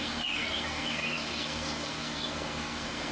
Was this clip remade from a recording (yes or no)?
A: yes